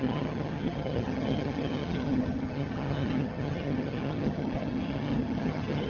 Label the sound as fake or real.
fake